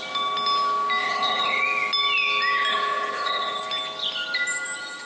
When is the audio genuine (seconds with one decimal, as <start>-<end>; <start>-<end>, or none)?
0.0-1.0; 1.6-2.7; 3.6-5.1